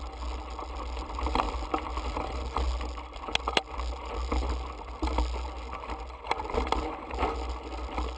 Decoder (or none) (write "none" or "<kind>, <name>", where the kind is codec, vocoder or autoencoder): none